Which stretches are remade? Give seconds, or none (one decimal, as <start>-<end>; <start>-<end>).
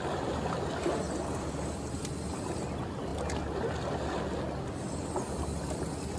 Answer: none